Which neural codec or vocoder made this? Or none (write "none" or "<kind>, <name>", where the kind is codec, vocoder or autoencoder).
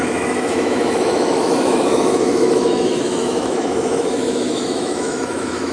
autoencoder, DAC-VAE